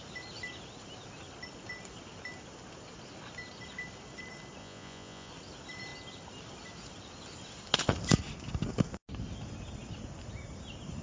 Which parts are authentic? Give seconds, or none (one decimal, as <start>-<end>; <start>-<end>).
0.0-4.6; 5.3-11.0